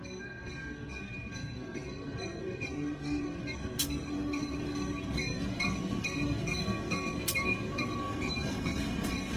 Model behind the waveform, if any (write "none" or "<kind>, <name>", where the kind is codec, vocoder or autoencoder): codec, SNAC